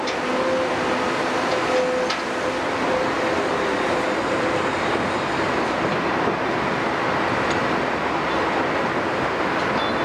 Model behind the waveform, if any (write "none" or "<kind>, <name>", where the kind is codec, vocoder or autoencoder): none